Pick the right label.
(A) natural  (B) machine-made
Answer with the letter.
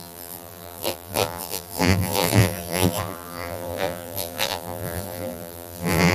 B